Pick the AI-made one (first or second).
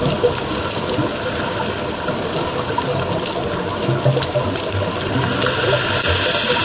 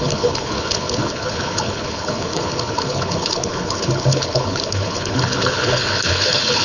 second